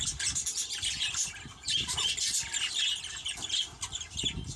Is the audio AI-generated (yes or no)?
no